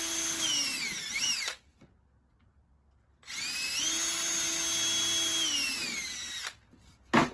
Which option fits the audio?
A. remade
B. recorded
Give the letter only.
B